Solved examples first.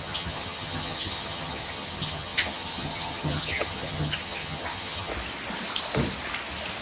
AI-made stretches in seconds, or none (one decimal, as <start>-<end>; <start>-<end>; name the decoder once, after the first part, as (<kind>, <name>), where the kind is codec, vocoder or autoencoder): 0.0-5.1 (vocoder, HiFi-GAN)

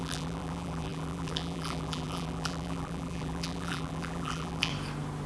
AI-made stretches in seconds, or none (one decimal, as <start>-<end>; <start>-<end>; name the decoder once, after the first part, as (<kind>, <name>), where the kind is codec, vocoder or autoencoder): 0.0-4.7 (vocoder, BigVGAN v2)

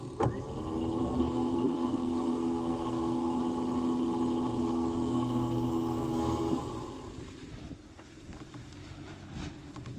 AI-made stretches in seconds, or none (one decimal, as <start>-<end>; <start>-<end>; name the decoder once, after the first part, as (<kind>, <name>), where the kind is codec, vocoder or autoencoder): 1.0-3.4 (codec, SNAC); 4.6-6.6

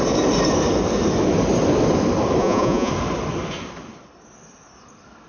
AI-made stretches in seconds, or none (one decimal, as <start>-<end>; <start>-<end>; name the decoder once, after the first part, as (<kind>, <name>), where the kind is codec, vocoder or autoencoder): 2.4-2.9 (vocoder, Vocos)

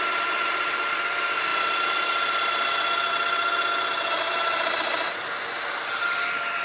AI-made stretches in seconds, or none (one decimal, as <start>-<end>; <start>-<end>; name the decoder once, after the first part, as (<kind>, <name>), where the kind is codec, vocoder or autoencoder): none

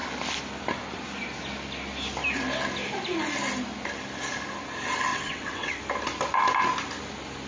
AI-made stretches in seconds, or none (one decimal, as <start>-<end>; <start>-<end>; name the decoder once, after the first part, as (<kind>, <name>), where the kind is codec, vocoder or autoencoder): 5.1-5.8 (vocoder, WaveNeXt)